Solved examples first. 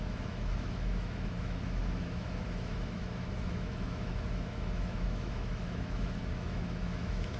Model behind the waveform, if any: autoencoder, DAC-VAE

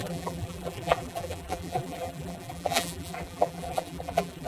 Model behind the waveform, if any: vocoder, BigVGAN v2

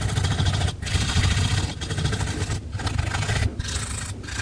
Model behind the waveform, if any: none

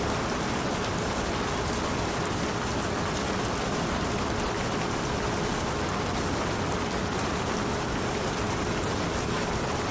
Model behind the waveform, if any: none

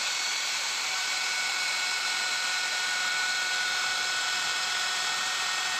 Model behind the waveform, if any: vocoder, BigVGAN v2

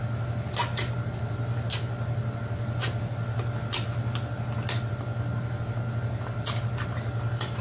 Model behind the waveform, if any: none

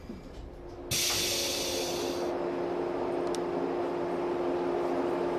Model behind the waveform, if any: none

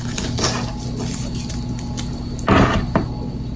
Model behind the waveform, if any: none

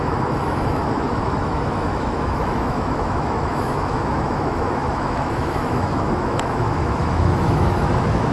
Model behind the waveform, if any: autoencoder, DAC-VAE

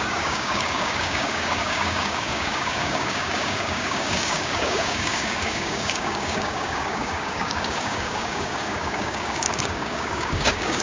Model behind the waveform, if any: codec, DAC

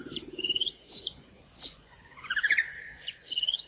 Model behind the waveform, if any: vocoder, Vocos